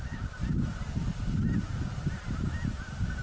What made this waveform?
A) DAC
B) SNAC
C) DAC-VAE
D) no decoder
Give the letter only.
D